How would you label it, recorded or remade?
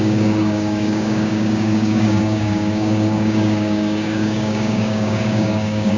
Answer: remade